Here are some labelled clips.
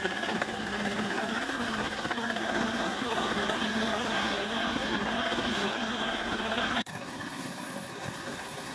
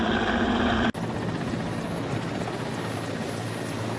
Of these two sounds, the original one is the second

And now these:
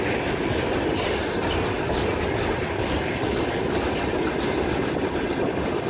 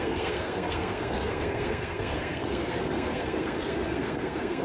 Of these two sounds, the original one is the first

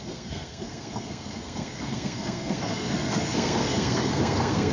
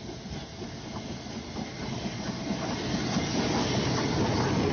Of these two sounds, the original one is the second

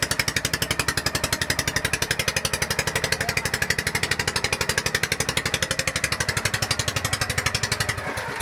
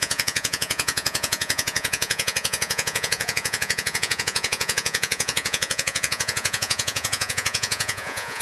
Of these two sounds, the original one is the first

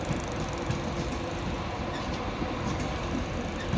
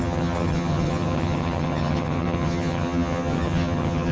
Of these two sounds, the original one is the first